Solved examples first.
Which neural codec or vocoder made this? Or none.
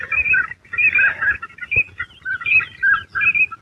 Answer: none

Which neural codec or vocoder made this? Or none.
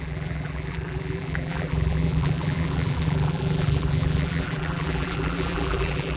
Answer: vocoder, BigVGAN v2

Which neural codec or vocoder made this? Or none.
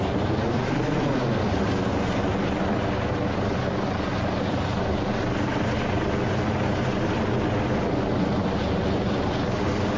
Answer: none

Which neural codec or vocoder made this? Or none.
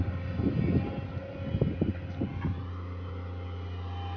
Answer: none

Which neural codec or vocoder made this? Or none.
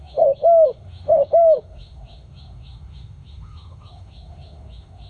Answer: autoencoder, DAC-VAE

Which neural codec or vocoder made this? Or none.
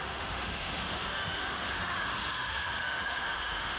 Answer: autoencoder, DAC-VAE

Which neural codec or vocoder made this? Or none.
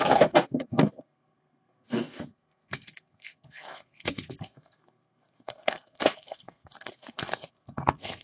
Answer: codec, SNAC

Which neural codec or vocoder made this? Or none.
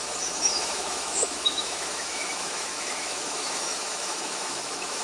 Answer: autoencoder, DAC-VAE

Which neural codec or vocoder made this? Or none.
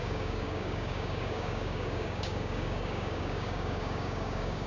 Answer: codec, DAC